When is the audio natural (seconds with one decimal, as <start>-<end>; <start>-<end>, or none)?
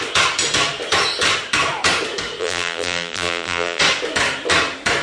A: 0.0-2.4; 3.8-5.0